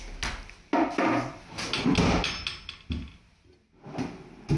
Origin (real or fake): real